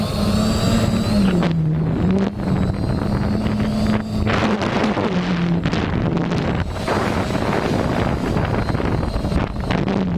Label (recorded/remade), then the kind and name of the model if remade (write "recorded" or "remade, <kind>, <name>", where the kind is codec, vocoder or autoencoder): recorded